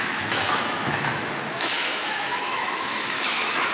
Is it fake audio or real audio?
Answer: fake